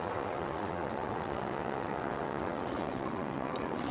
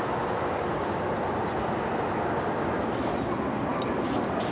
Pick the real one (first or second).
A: second